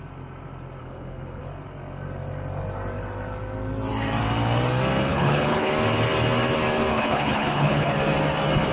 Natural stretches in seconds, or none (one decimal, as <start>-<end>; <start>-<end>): 0.0-0.8; 1.4-5.1; 5.7-6.9; 8.0-8.7